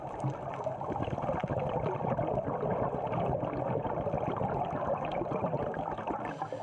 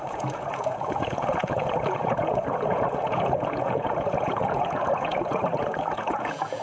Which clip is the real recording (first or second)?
first